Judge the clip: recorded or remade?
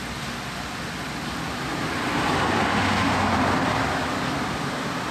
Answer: recorded